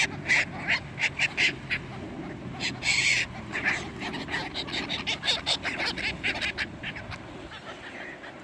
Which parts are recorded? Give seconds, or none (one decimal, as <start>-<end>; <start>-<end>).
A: 0.0-8.4